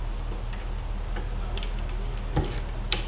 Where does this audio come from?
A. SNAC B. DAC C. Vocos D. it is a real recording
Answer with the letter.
D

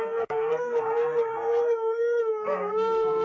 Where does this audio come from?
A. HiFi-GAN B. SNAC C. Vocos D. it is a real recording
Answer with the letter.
B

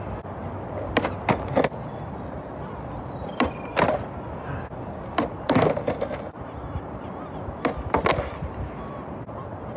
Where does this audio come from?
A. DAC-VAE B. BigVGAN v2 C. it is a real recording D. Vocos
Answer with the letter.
C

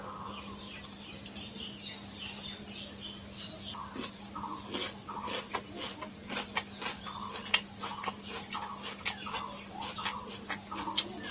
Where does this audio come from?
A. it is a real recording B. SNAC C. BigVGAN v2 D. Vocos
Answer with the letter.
A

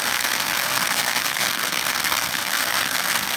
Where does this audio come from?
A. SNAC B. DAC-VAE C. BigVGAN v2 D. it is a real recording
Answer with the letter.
A